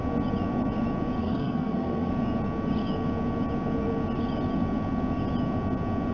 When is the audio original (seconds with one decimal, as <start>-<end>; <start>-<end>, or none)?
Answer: 0.0-1.2; 2.1-6.1